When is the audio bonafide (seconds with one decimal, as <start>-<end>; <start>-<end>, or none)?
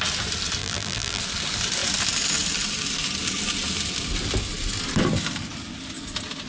0.0-0.6; 1.2-6.5